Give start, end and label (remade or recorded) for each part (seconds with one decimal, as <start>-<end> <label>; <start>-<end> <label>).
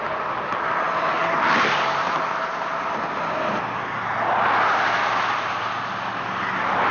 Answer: 0.0-6.9 recorded